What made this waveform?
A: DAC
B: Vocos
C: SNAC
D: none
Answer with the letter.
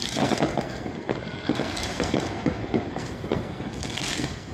C